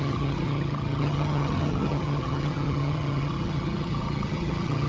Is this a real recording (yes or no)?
no